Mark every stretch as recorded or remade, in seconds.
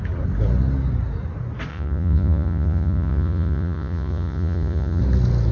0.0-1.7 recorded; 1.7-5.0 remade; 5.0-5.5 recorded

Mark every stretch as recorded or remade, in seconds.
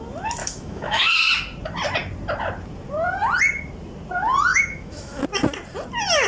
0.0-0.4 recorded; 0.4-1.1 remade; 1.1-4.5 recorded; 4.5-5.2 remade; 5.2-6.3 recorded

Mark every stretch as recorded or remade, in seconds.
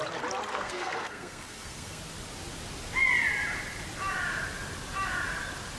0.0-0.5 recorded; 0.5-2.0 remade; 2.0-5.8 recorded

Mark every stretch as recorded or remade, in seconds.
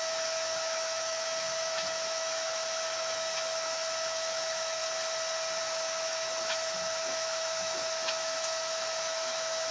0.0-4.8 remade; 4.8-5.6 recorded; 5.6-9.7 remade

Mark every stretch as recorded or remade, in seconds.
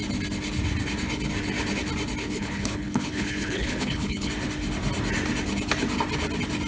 0.0-2.2 recorded; 2.2-4.3 remade; 4.3-6.7 recorded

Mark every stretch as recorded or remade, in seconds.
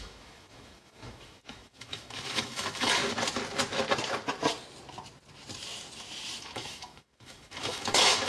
0.0-3.0 remade; 3.0-6.4 recorded; 6.4-8.3 remade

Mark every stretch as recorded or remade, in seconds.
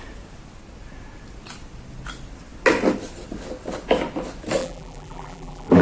0.0-4.6 recorded; 4.6-5.8 remade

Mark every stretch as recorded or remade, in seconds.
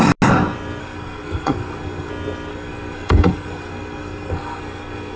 0.0-0.8 recorded; 0.8-2.1 remade; 2.1-2.5 recorded; 2.5-5.2 remade